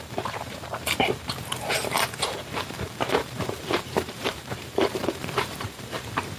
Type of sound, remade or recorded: remade